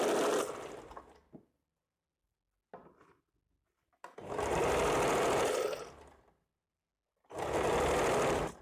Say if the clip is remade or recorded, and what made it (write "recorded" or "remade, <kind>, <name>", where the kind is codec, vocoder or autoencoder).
recorded